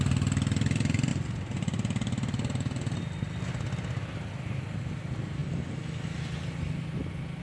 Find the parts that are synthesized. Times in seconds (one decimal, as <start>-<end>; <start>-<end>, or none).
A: none